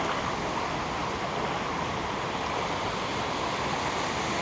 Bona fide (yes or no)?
yes